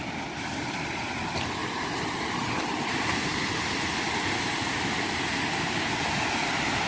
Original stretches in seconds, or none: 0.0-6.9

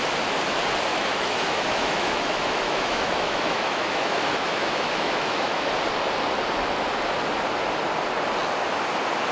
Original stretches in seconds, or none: 0.0-0.9; 5.7-9.3

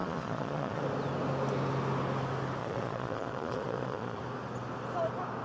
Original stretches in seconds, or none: 0.8-2.6; 4.2-5.4

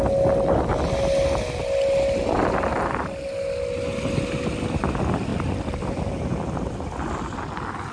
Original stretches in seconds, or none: 0.0-7.9

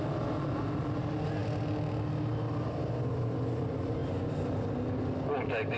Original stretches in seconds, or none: 0.0-5.8

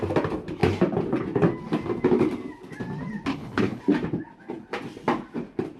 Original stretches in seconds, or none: 0.0-3.3; 3.8-5.8